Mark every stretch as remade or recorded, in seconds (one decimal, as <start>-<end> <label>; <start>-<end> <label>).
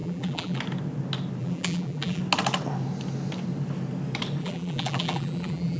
0.0-0.6 remade; 0.6-1.4 recorded; 1.4-2.2 remade; 2.2-4.4 recorded; 4.4-5.8 remade